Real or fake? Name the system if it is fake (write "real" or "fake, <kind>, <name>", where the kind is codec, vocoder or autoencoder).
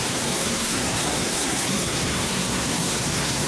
fake, codec, SNAC